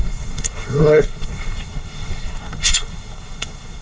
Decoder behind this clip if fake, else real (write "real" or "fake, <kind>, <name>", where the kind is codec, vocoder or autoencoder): fake, codec, SNAC